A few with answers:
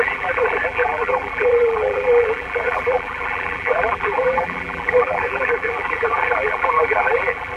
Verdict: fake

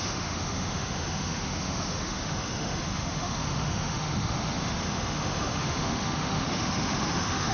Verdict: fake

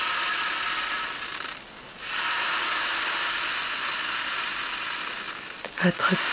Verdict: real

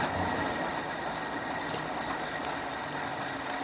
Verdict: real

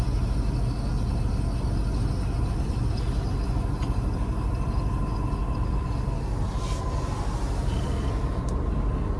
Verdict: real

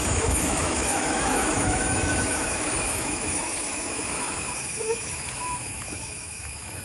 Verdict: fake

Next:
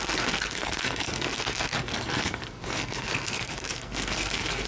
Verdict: fake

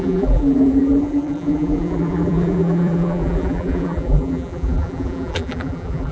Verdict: fake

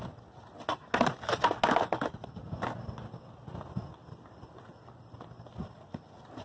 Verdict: real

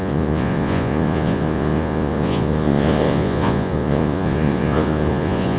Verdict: fake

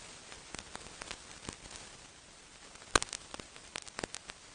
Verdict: real